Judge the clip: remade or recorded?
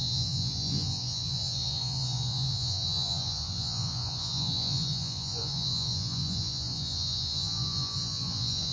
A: remade